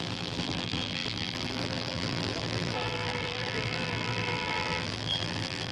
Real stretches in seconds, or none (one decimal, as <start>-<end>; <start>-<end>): none